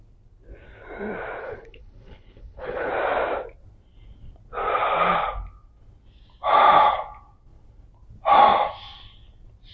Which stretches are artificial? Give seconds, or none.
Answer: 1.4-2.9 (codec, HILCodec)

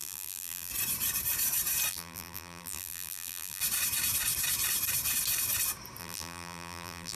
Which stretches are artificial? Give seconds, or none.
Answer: 0.0-0.7 (vocoder, BigVGAN v2); 1.9-3.6; 6.0-7.2